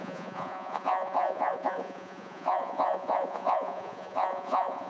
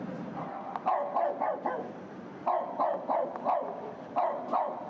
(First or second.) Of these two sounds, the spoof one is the first